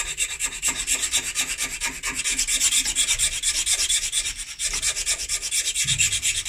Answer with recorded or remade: recorded